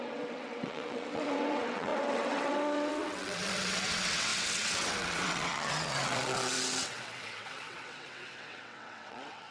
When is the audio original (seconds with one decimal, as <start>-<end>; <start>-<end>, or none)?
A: none